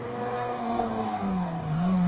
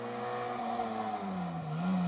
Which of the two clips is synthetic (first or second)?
first